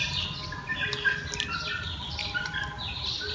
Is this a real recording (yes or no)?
no